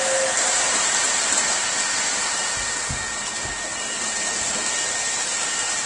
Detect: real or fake real